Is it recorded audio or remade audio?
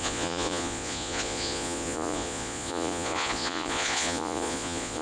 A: remade